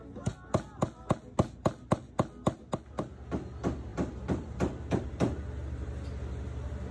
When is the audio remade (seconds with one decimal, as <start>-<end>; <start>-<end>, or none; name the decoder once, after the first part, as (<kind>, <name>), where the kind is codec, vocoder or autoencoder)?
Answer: 3.9-5.0 (vocoder, BigVGAN v2)